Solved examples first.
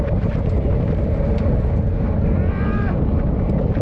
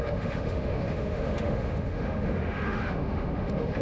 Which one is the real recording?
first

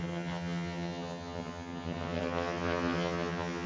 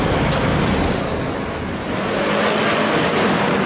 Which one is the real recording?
second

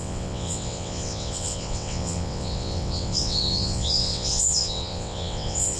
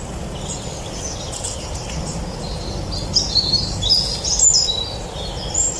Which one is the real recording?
second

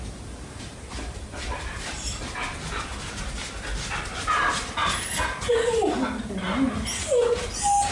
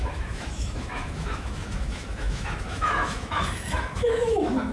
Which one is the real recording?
first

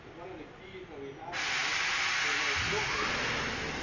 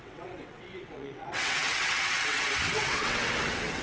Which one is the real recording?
first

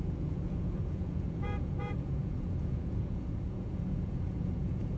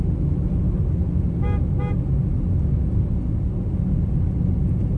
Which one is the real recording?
second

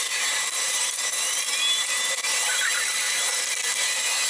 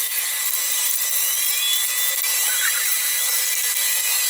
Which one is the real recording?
second